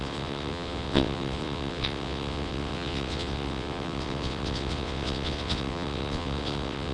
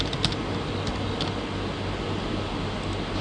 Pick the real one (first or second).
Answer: second